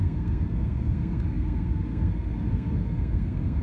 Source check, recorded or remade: remade